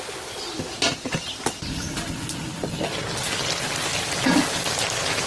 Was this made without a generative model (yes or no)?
yes